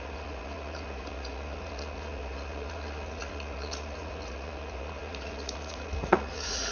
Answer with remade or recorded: remade